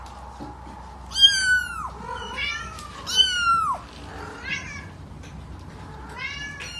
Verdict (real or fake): real